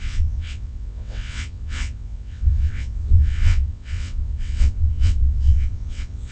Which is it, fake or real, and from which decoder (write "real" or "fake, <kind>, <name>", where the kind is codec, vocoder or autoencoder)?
fake, vocoder, WaveNeXt